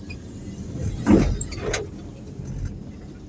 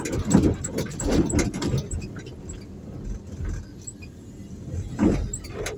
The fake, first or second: first